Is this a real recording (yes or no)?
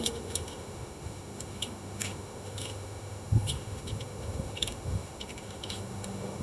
no